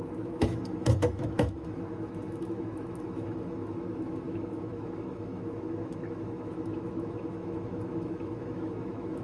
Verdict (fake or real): fake